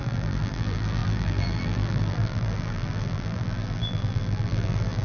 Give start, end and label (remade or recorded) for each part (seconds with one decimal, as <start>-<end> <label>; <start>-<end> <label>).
0.0-5.0 remade